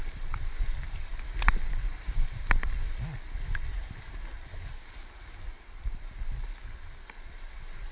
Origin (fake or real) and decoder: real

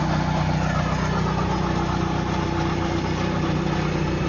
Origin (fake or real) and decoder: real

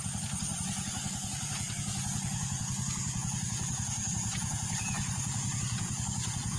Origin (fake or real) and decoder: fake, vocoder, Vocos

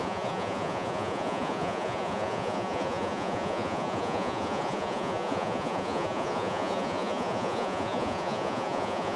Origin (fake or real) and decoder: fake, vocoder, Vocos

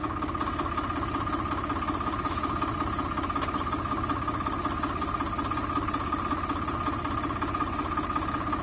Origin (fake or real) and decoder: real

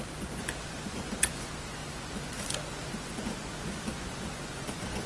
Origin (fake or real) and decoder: fake, vocoder, Vocos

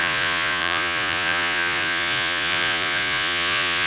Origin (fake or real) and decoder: fake, vocoder, Vocos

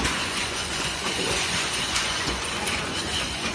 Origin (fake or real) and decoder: fake, vocoder, Vocos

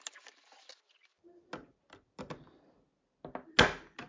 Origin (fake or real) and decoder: real